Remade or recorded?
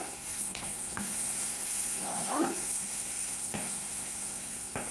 remade